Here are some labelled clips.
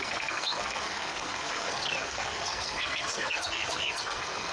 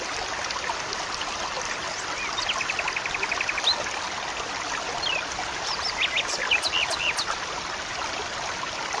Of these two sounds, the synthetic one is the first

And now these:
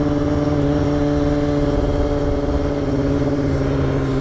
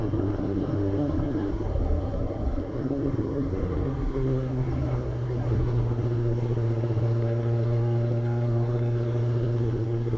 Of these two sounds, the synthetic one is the second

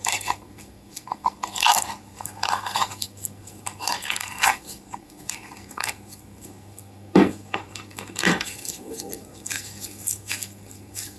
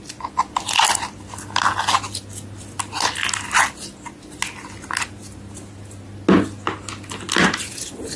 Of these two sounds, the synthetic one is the first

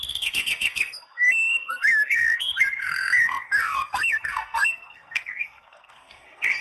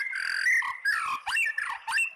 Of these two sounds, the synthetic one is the first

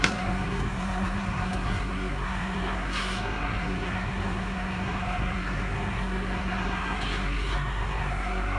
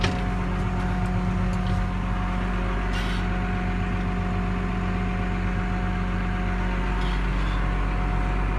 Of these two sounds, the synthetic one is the first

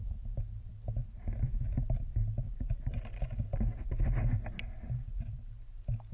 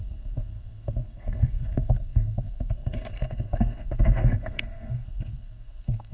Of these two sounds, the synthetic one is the second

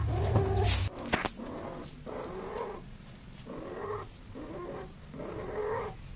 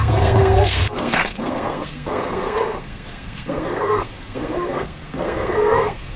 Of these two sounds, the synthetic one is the second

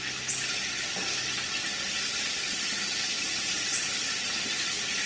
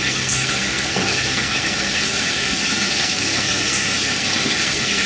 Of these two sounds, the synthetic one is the second